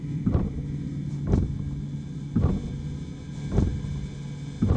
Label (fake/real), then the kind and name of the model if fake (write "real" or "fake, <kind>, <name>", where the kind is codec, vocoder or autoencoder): real